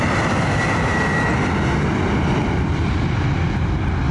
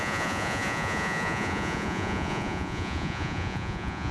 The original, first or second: first